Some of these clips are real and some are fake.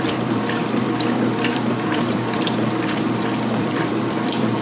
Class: fake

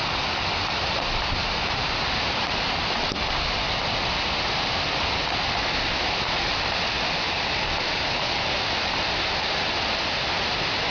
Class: real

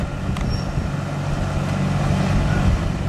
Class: real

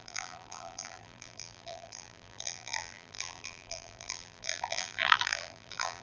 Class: fake